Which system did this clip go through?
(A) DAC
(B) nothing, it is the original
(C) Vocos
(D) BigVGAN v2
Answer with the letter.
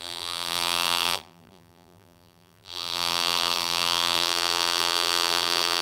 D